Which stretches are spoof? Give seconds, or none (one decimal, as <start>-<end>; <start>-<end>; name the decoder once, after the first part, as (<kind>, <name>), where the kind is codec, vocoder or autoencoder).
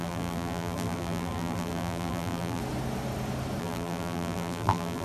0.0-2.6 (vocoder, BigVGAN v2); 3.6-5.0